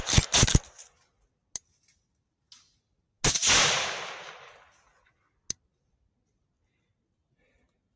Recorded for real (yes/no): yes